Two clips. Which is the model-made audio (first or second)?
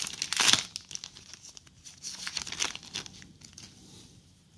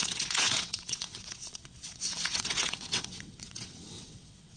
second